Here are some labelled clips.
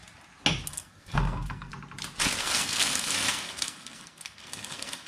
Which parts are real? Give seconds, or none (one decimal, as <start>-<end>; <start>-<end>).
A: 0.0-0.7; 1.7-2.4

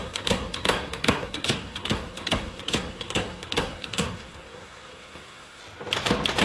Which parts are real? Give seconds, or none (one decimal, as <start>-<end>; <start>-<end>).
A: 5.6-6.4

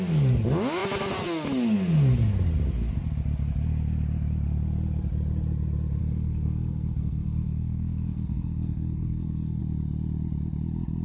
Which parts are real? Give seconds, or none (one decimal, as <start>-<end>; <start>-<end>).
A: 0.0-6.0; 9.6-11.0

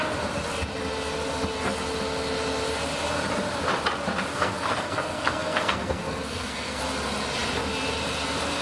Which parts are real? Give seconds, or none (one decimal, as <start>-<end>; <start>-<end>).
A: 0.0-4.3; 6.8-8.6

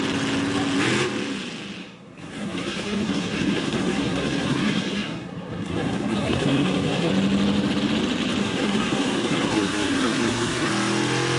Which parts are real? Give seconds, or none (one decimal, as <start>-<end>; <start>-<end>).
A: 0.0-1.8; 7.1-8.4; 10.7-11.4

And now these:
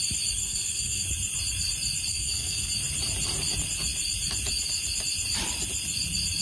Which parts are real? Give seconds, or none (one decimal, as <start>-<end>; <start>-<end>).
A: 0.0-0.4; 1.0-2.1; 2.7-6.4

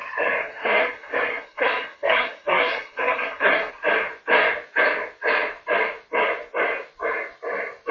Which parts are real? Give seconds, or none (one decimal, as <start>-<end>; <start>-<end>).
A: 0.0-0.4; 3.7-7.9